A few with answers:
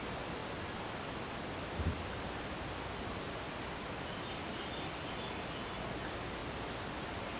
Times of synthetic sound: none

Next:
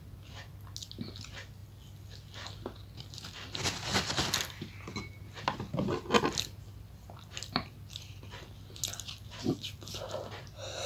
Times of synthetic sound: none

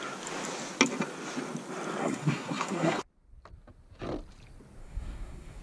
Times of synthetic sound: 2.0-3.0 (codec, SNAC); 4.8-5.6

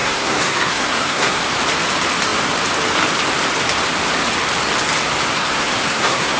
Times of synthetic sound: 0.0-1.4 (codec, SNAC); 5.3-6.4

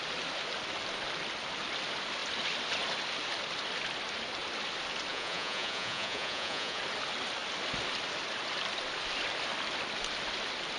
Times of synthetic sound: 5.1-6.8 (vocoder, Vocos)

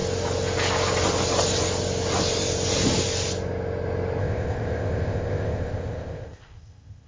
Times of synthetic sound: 4.2-7.1 (codec, ZipCodec)

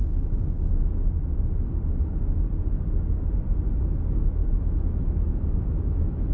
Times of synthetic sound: 4.2-6.3 (autoencoder, DAC-VAE)